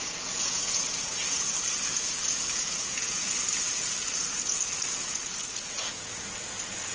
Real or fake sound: fake